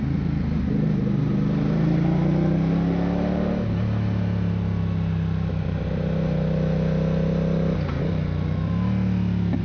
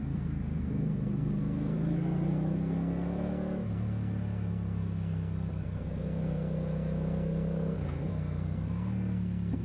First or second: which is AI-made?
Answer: second